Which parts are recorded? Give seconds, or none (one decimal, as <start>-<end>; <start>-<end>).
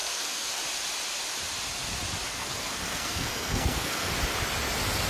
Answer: 0.6-2.3; 4.1-5.1